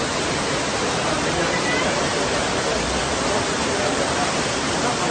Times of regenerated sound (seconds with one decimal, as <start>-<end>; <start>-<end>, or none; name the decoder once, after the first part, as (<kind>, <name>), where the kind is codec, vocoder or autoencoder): none